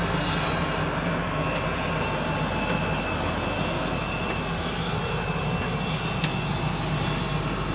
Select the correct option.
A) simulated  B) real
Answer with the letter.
B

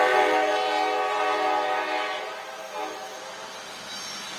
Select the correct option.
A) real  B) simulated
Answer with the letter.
A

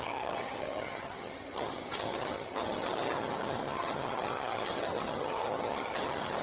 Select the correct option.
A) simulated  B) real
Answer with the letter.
A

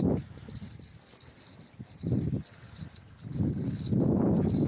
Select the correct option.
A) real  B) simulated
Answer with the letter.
A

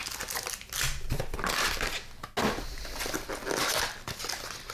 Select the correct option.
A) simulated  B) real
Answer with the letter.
B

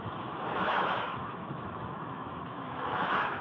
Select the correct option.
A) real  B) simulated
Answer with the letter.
B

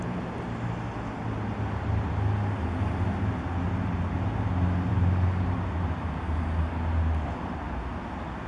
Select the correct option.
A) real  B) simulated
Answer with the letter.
A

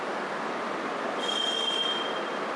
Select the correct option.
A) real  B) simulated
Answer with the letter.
A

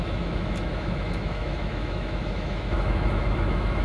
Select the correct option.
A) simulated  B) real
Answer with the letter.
A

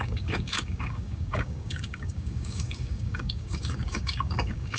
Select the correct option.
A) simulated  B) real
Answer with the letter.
A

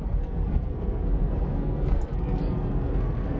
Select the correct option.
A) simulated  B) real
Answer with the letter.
A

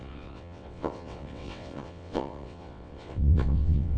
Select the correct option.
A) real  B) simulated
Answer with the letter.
B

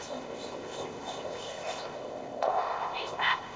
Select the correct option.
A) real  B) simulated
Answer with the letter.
B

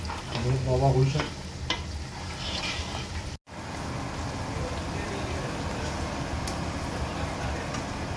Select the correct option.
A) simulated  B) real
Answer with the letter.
B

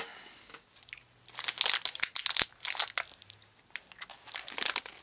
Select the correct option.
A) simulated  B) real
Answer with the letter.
B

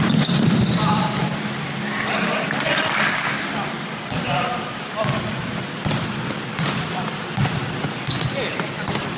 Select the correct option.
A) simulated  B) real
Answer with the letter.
B